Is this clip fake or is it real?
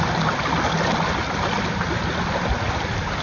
real